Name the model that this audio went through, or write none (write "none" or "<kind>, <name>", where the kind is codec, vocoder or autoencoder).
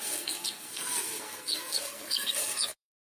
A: codec, SNAC